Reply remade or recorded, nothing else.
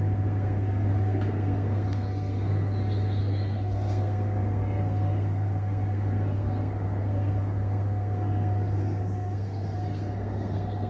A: remade